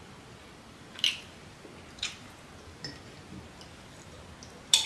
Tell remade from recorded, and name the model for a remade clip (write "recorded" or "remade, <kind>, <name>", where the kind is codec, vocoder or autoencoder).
recorded